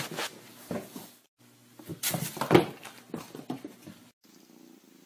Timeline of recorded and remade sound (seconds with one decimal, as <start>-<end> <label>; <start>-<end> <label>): 0.0-0.5 recorded; 0.5-1.1 remade; 1.1-5.1 recorded